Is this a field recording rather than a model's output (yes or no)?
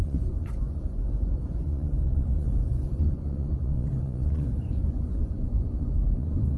no